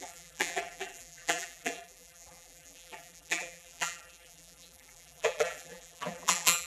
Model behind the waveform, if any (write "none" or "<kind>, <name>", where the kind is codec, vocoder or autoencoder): vocoder, BigVGAN v2